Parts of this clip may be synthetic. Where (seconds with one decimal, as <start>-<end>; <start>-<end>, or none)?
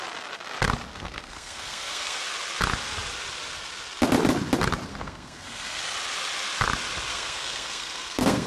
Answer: 0.9-2.2; 4.9-5.8; 7.1-8.5